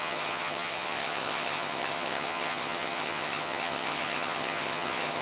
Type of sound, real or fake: fake